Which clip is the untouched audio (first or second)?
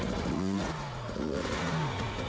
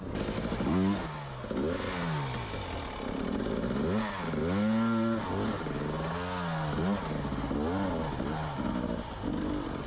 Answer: second